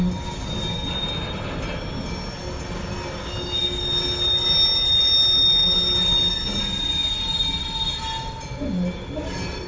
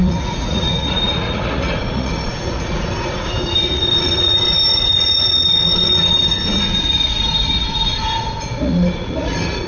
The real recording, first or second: first